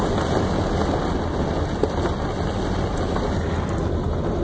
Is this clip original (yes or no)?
yes